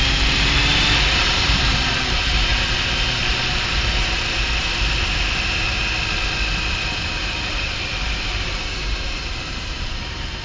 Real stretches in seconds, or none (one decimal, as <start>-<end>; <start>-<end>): 2.5-3.2; 5.8-7.2